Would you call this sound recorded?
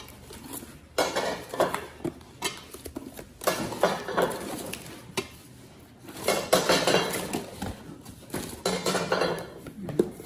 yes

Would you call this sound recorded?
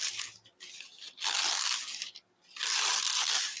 yes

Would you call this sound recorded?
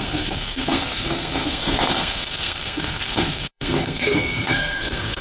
no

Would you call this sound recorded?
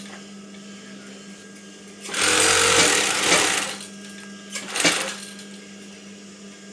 yes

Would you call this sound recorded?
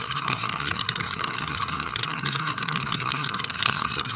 no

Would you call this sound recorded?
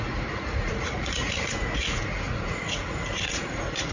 no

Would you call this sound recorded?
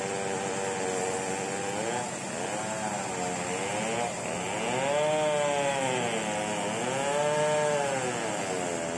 yes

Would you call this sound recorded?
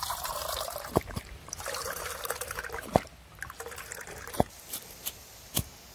no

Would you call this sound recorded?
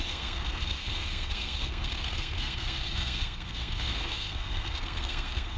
no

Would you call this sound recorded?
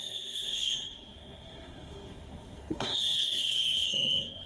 no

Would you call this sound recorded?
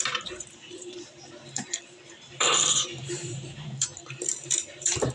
no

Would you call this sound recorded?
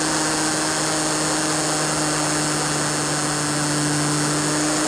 yes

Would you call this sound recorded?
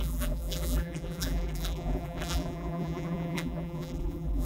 no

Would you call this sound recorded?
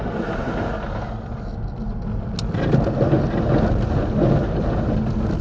yes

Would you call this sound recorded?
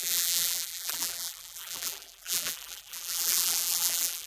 no